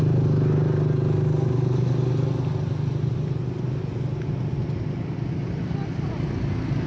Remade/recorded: recorded